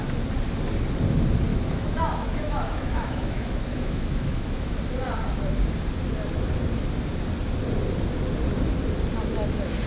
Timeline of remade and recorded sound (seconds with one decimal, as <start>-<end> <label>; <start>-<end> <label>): 0.0-1.5 recorded; 1.5-4.7 remade; 4.7-9.9 recorded